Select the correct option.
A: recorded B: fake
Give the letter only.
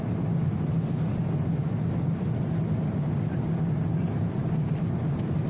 A